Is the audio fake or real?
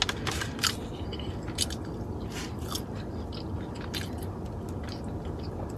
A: real